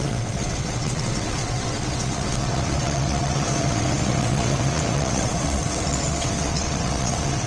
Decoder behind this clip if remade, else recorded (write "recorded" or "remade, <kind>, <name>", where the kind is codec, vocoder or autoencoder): remade, vocoder, WaveNeXt